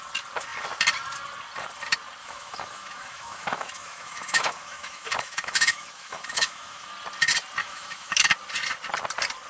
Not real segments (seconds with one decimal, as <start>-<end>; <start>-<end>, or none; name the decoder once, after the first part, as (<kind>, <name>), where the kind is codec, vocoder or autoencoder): 2.2-6.9 (autoencoder, DAC-VAE); 7.6-8.3